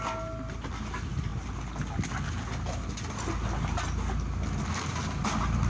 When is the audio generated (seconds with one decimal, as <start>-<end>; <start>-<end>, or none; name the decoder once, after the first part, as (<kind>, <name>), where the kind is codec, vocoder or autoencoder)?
none